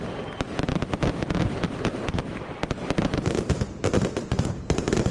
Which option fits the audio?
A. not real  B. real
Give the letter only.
B